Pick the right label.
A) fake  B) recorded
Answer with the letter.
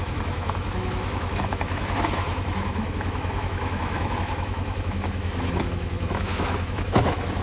A